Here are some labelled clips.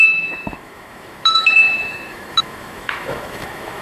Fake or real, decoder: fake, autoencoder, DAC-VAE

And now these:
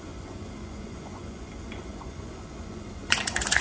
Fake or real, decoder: fake, vocoder, Vocos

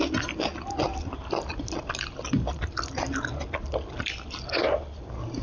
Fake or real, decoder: real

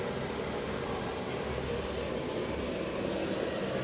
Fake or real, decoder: real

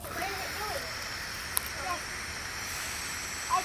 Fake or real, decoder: real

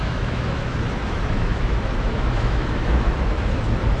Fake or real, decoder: fake, autoencoder, DAC-VAE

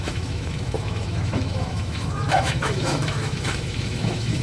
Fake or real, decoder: fake, autoencoder, DAC-VAE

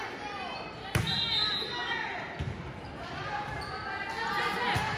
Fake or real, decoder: real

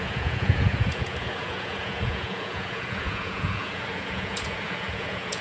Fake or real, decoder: fake, vocoder, Vocos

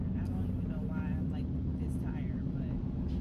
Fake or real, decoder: real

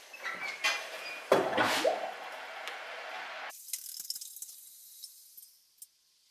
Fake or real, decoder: real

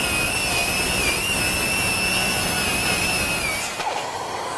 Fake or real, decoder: real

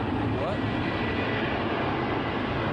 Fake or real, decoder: real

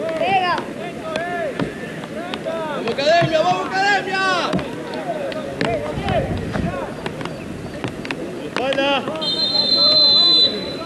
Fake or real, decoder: real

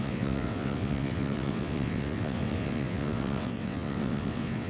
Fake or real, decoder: fake, vocoder, WaveNeXt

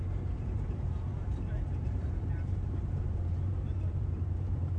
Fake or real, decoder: fake, vocoder, BigVGAN v2